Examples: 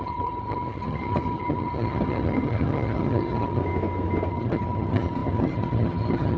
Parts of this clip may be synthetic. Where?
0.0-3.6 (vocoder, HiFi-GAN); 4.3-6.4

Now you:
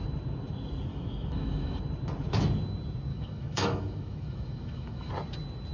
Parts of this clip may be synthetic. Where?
0.9-1.8 (autoencoder, DAC-VAE); 3.1-5.1

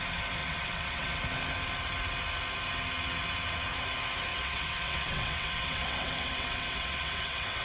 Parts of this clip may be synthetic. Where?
0.4-1.2 (vocoder, WaveNeXt); 4.3-7.6

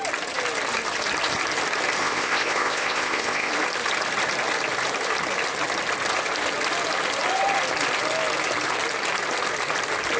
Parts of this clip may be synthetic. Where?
2.0-3.5 (codec, ZipCodec)

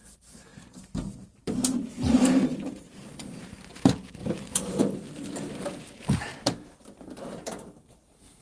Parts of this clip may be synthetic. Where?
0.0-8.4 (vocoder, BigVGAN v2)

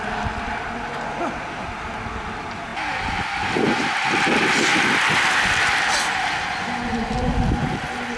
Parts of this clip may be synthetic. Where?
none